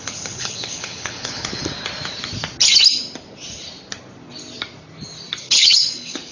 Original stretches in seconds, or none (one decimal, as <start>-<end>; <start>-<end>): 1.6-5.4